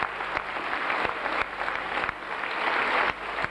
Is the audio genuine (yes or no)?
yes